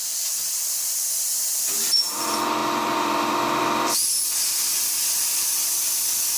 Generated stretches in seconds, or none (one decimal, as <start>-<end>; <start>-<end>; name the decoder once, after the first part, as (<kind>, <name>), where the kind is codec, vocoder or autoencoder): 0.0-4.0 (vocoder, BigVGAN v2); 4.9-6.4